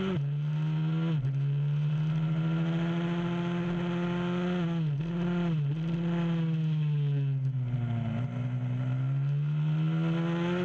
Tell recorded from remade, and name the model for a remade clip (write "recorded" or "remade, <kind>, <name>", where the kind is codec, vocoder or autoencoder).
recorded